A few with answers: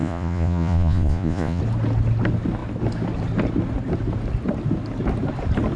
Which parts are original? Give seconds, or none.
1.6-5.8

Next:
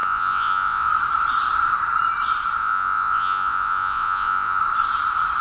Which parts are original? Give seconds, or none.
0.9-2.6; 4.6-5.4